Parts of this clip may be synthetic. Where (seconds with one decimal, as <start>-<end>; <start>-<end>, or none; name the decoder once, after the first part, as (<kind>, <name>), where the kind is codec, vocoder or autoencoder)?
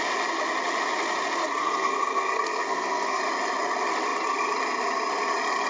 1.6-3.2 (codec, SNAC)